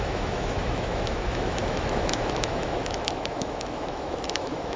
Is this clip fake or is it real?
fake